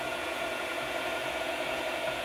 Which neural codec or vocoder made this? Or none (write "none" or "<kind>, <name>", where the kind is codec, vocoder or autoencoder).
vocoder, Vocos